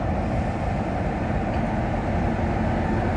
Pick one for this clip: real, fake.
real